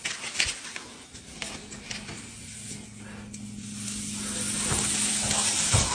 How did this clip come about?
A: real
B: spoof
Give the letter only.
A